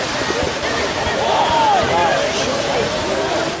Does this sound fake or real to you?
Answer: real